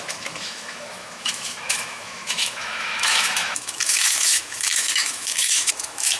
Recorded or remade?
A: remade